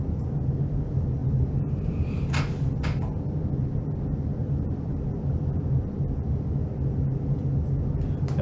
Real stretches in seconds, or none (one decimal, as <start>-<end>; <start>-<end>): 0.0-1.2; 2.4-4.4; 5.0-8.4